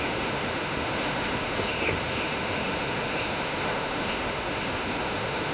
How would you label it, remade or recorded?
remade